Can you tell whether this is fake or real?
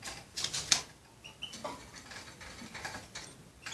real